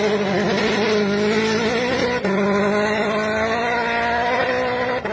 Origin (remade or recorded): recorded